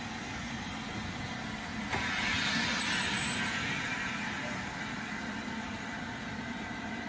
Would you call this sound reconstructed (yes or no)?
no